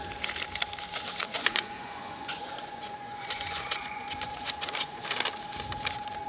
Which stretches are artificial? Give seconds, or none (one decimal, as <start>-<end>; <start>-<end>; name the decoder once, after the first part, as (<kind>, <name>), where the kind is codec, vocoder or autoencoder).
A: 1.2-5.0 (vocoder, Vocos)